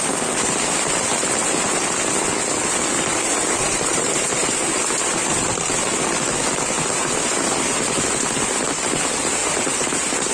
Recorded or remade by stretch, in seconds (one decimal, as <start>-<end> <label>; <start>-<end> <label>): 0.0-3.1 recorded; 3.1-4.5 remade; 4.5-10.3 recorded